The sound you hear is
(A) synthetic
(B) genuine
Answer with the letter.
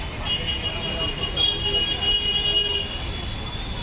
B